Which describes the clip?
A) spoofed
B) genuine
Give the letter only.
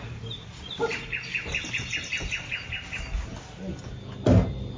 B